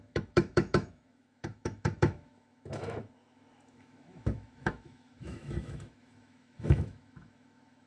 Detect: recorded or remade remade